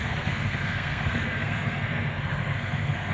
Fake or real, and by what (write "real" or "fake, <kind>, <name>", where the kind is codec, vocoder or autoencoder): fake, codec, SNAC